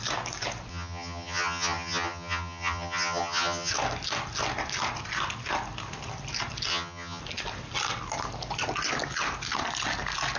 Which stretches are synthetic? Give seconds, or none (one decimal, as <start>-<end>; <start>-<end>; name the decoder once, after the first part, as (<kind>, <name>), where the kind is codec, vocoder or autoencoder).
0.7-3.7 (vocoder, HiFi-GAN); 6.7-7.2

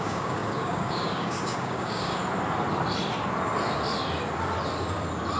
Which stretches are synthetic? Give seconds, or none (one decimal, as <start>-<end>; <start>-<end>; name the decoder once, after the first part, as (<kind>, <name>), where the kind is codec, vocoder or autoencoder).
0.0-2.2 (codec, DAC)

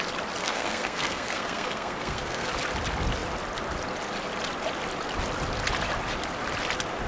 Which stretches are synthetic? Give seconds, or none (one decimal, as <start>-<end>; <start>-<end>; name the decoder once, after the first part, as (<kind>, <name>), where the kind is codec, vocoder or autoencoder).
0.4-2.5 (codec, SNAC)

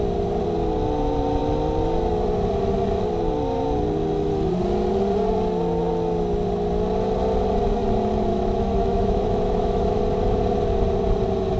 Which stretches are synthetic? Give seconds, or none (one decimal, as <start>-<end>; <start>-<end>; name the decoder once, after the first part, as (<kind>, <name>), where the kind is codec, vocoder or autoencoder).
8.3-10.0 (autoencoder, DAC-VAE)

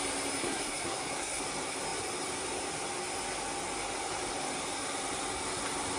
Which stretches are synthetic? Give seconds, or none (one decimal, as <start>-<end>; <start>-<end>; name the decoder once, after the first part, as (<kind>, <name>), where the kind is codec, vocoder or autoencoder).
0.4-1.4 (codec, SNAC)

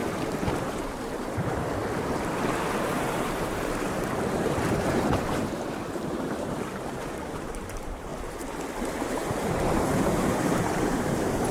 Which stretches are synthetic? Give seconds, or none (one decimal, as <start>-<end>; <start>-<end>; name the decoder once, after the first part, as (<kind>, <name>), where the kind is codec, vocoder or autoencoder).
0.0-1.8 (vocoder, BigVGAN v2); 2.8-8.1; 9.1-11.5

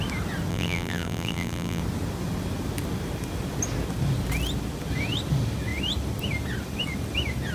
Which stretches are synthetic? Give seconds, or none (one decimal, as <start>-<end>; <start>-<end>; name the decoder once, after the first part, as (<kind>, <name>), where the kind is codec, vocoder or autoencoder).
0.5-1.8 (vocoder, BigVGAN v2)